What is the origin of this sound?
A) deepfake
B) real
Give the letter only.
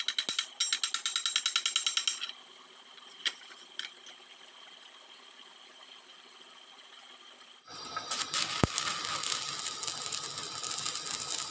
B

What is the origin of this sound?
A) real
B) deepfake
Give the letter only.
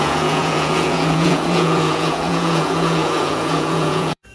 B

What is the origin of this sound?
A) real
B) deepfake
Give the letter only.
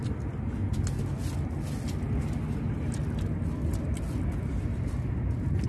A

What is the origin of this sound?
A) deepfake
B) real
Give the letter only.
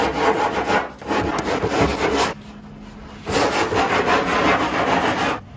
B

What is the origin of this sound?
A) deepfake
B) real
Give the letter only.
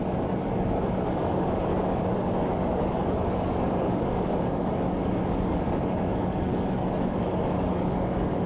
A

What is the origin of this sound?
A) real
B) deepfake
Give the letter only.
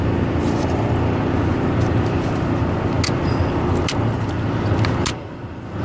A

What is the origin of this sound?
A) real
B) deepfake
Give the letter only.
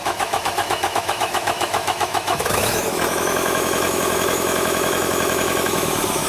B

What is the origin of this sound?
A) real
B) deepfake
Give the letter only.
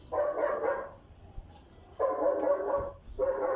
A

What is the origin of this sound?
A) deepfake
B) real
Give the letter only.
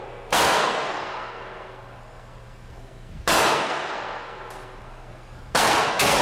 A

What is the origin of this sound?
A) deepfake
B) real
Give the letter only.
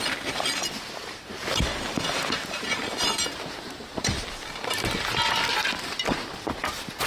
A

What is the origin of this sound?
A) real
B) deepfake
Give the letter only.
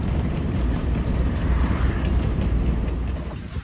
B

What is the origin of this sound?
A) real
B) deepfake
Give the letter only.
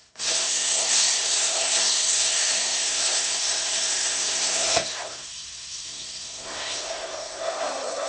B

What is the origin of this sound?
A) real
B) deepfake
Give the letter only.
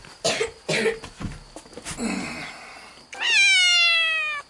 A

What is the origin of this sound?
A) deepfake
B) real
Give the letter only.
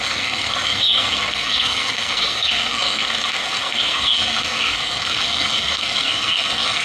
A